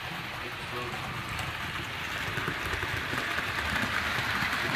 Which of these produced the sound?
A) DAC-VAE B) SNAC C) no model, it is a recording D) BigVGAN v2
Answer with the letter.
C